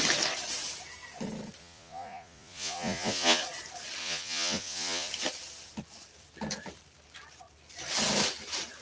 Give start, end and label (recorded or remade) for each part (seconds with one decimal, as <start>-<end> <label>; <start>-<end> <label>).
0.0-1.6 recorded; 1.6-3.4 remade; 3.4-4.0 recorded; 4.0-5.1 remade; 5.1-8.8 recorded